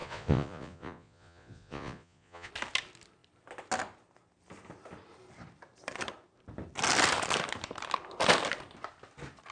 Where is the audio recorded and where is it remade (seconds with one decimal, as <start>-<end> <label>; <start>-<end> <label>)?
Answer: 0.0-2.5 remade; 2.5-9.5 recorded